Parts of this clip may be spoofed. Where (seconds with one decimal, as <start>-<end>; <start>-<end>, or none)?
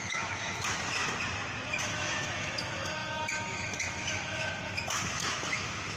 0.0-1.0; 1.8-6.0